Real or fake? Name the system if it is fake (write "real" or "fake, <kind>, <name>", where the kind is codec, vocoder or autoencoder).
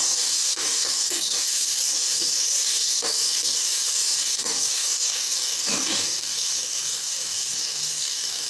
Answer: fake, codec, DAC